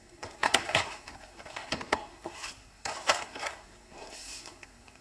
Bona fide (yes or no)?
no